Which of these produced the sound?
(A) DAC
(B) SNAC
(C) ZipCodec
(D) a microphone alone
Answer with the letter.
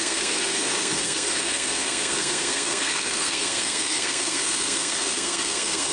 B